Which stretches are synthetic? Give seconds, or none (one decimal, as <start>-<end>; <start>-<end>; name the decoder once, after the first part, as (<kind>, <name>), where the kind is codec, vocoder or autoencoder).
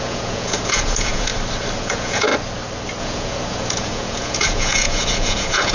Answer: 0.0-1.3 (vocoder, Vocos); 1.8-2.3; 3.0-5.7